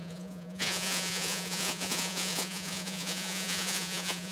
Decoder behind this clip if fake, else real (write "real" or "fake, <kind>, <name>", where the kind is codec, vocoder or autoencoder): fake, vocoder, Vocos